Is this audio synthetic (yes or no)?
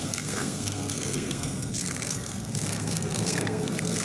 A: yes